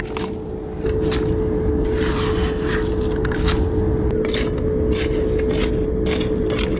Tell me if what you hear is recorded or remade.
recorded